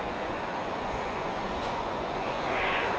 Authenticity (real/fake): fake